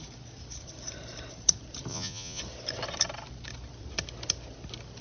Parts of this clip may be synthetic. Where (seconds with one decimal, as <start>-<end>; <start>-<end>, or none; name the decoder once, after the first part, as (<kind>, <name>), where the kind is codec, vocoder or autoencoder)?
1.9-2.4 (vocoder, Vocos)

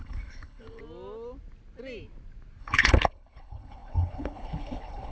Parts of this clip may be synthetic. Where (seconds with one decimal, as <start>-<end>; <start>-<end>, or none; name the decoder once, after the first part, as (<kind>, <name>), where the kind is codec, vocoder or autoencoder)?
0.0-0.8 (codec, HILCodec); 2.6-5.1

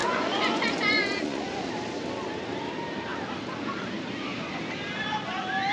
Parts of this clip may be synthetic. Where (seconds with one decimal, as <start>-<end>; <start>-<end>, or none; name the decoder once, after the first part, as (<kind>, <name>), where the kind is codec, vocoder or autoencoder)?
0.0-1.7 (vocoder, Vocos)

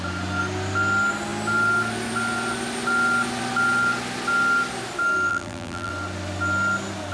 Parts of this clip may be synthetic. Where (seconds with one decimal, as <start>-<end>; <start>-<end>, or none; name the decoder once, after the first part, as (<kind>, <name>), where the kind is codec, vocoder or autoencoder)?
5.3-5.9 (vocoder, BigVGAN v2)